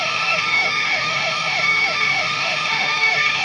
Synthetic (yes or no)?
yes